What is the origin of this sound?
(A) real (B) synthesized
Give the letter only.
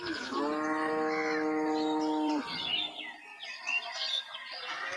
A